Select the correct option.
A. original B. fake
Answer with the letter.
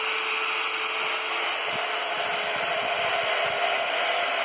A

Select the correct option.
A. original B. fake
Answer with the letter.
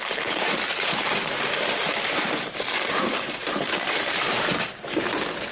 B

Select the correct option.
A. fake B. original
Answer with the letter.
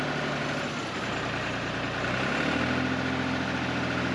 B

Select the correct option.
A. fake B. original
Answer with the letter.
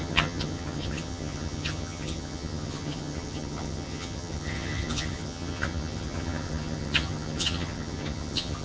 A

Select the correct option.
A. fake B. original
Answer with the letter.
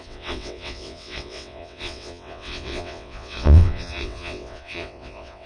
A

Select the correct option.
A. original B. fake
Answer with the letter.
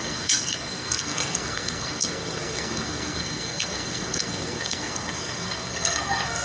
B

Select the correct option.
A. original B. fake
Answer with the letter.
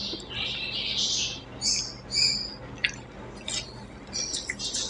A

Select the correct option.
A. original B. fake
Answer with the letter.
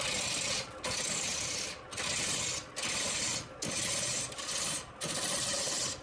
A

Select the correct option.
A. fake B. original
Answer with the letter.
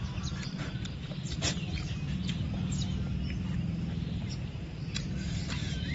B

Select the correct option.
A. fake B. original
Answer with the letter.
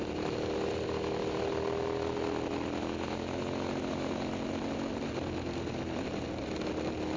B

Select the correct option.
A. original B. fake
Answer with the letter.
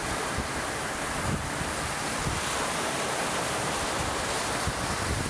A